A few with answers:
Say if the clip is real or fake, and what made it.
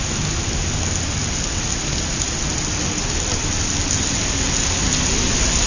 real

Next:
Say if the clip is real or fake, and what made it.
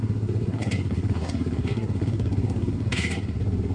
fake, codec, SNAC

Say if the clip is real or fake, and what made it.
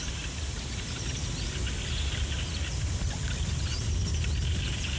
real